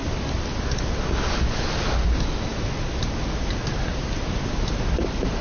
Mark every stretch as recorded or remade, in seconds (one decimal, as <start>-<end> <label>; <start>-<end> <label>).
0.0-1.0 remade; 1.0-5.4 recorded